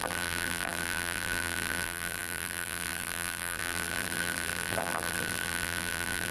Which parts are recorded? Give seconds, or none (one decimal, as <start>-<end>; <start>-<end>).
none